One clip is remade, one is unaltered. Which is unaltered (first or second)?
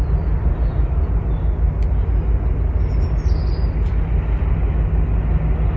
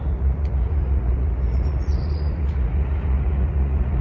first